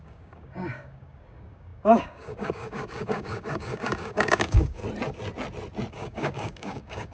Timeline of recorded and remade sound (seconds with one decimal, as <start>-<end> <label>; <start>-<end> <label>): 0.0-4.8 remade; 4.8-5.9 recorded; 5.9-7.1 remade